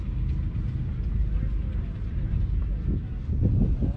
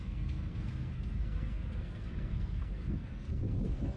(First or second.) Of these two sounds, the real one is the first